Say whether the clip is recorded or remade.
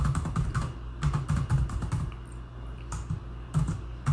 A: recorded